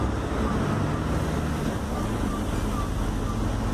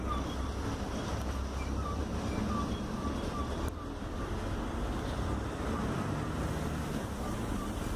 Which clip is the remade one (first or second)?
second